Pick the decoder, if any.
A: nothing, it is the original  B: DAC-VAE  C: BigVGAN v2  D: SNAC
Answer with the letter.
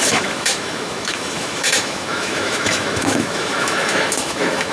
B